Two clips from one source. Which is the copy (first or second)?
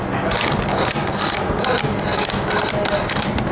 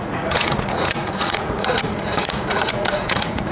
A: second